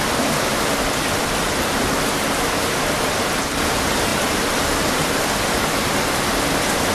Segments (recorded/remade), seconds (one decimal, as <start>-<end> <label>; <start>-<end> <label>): 0.0-4.1 recorded; 4.1-5.3 remade; 5.3-6.9 recorded

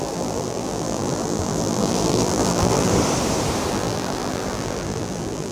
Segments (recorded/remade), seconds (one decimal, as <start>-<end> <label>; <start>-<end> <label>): 0.0-2.9 remade; 2.9-3.7 recorded; 3.7-5.5 remade

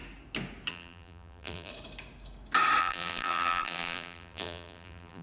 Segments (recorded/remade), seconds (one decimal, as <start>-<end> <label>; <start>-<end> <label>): 0.0-0.7 recorded; 0.7-1.7 remade; 1.7-2.8 recorded; 2.8-5.2 remade

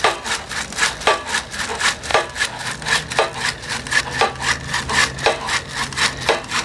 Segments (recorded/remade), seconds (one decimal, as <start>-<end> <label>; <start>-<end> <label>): 0.0-6.6 recorded

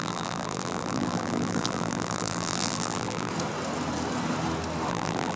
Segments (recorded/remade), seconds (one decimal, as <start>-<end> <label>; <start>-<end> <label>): 0.0-3.3 remade; 3.3-4.9 recorded; 4.9-5.4 remade

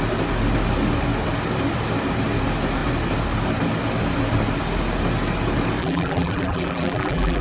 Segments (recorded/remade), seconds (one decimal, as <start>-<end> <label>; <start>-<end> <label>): 0.0-5.8 recorded; 5.8-7.4 remade

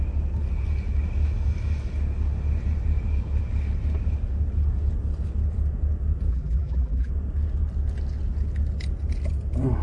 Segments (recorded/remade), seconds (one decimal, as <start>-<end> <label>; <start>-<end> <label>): 0.0-6.3 recorded; 6.3-7.1 remade; 7.1-9.8 recorded

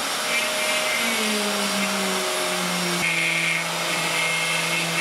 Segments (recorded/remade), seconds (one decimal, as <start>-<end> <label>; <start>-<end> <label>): 0.0-5.0 recorded